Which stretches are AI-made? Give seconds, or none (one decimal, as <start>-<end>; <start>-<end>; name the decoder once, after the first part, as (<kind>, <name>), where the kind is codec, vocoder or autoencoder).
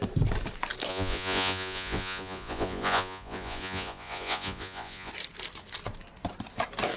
0.9-5.1 (vocoder, Vocos)